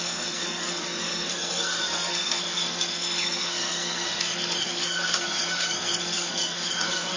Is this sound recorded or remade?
remade